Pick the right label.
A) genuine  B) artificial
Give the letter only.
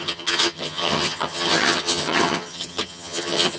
B